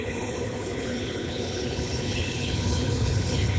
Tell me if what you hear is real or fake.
fake